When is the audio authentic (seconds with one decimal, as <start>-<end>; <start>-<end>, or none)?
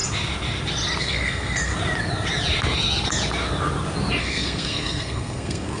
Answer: 0.0-1.0; 1.7-4.2